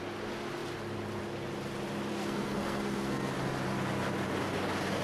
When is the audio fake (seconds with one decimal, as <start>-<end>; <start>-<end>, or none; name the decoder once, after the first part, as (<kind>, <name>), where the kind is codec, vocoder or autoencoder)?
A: 2.1-3.3 (codec, SNAC)